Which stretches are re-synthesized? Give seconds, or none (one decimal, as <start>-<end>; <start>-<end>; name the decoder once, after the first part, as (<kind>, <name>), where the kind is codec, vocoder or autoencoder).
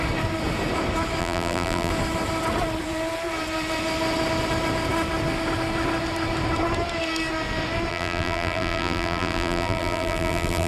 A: 1.2-1.9 (vocoder, BigVGAN v2); 7.9-10.7